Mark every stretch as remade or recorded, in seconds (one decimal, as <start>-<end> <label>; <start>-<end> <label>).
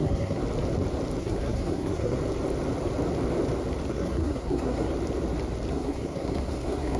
0.0-0.4 remade; 0.4-1.2 recorded; 1.2-2.2 remade; 2.2-3.9 recorded; 3.9-4.9 remade; 4.9-5.7 recorded; 5.7-7.0 remade